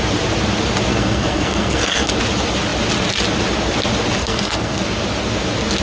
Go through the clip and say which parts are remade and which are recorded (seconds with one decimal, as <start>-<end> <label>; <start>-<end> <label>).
0.0-0.9 recorded; 0.9-2.2 remade; 2.2-4.2 recorded; 4.2-4.8 remade; 4.8-5.8 recorded